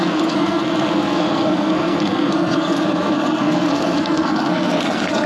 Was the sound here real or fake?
fake